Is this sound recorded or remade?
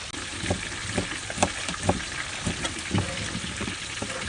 recorded